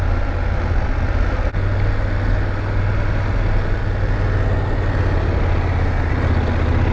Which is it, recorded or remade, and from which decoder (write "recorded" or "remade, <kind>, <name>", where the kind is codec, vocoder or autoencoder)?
recorded